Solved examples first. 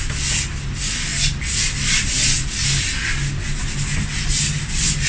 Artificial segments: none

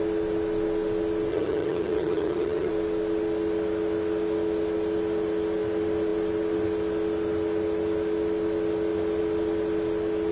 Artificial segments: 1.3-2.7 (vocoder, HiFi-GAN)

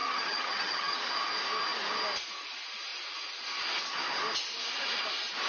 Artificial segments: 0.0-1.1 (vocoder, HiFi-GAN)

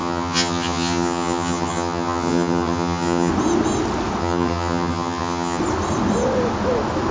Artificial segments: 0.0-3.3 (vocoder, HiFi-GAN); 4.2-5.6

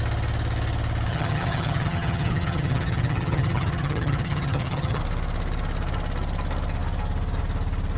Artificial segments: 1.1-5.0 (vocoder, HiFi-GAN)

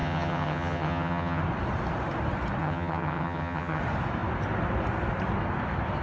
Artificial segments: 0.0-1.4 (vocoder, HiFi-GAN); 2.6-3.8